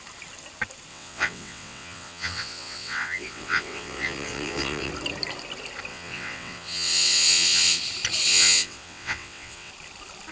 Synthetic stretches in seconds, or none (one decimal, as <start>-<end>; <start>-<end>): 0.9-4.9; 5.9-7.8; 8.3-9.7